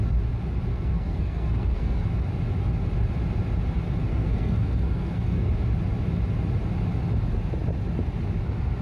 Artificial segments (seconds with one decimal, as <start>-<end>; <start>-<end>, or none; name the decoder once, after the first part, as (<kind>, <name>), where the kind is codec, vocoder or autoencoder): 0.7-2.1 (codec, SNAC); 4.1-5.5